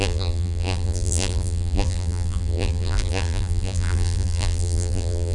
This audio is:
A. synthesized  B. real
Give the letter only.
A